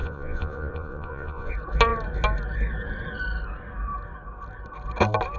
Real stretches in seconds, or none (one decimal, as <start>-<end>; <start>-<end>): 1.5-5.4